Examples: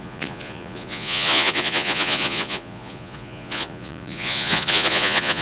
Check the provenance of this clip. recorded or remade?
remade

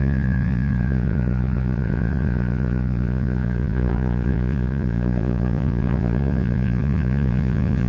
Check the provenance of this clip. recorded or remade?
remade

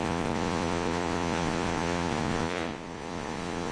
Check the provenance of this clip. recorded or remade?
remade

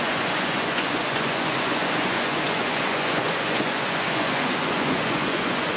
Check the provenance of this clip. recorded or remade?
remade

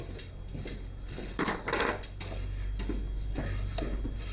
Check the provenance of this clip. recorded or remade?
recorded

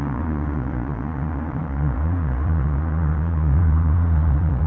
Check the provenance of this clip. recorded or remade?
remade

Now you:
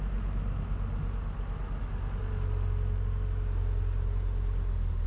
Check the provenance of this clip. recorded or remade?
recorded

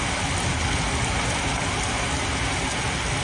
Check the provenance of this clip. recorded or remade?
recorded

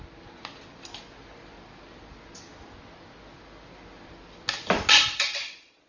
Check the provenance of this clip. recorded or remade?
recorded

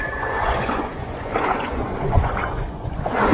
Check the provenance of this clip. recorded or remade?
remade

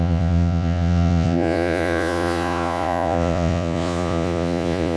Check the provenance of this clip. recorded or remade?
remade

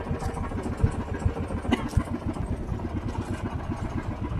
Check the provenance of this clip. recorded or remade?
recorded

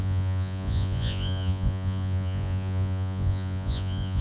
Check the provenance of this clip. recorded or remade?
remade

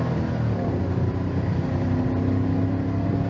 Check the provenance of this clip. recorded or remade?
recorded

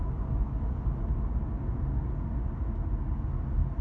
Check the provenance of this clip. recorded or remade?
recorded